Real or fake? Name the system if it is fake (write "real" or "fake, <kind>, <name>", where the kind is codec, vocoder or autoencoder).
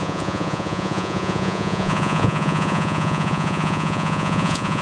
fake, vocoder, Vocos